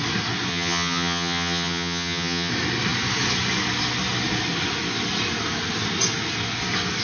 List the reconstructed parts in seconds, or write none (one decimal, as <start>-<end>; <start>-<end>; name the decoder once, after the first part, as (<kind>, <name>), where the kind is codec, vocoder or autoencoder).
0.5-2.5 (vocoder, HiFi-GAN)